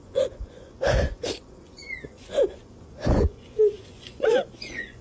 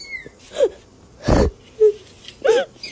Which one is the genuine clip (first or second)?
second